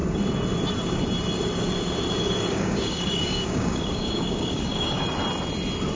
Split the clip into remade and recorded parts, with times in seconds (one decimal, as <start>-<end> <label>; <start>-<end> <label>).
0.0-2.5 recorded; 2.5-5.0 remade; 5.0-6.0 recorded